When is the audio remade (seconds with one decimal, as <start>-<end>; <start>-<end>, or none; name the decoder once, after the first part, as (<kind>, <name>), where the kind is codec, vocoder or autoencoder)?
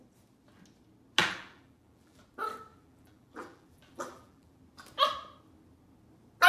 1.2-2.2 (vocoder, BigVGAN v2); 2.7-4.6